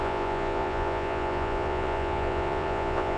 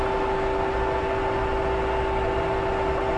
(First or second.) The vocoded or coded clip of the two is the first